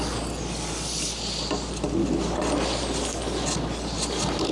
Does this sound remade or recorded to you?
recorded